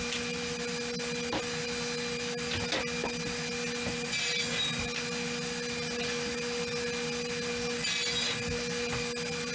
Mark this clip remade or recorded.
recorded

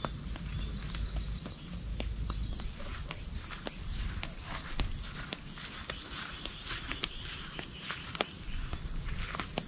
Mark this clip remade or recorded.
recorded